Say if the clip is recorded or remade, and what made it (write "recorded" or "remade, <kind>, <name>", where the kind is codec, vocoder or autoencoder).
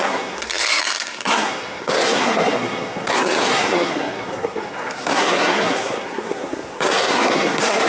remade, codec, SNAC